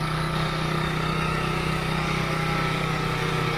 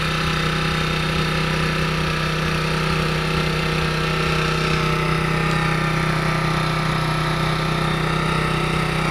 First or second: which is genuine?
second